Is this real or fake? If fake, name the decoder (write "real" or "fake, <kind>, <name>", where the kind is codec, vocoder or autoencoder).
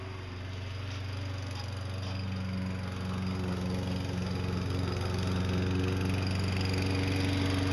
real